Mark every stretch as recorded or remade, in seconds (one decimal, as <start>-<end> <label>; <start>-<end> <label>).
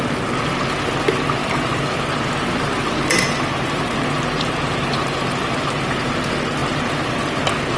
0.0-7.8 recorded